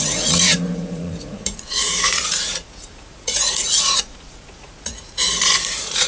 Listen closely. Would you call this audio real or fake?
fake